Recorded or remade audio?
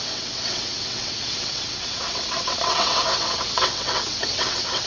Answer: remade